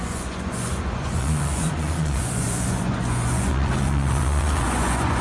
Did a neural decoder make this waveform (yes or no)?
yes